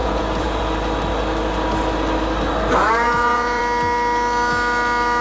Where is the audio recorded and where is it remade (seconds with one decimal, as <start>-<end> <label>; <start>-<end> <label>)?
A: 0.0-0.6 remade; 0.6-2.8 recorded; 2.8-3.6 remade; 3.6-5.2 recorded